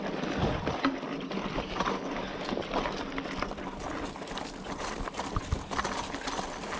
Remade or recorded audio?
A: recorded